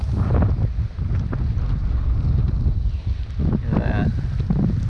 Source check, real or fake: real